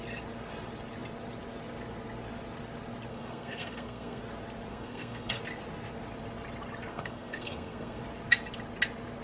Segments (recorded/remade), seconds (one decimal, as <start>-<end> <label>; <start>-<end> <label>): 0.0-3.1 recorded; 3.1-4.2 remade; 4.2-4.7 recorded; 4.7-5.4 remade; 5.4-6.9 recorded; 6.9-8.0 remade; 8.0-9.2 recorded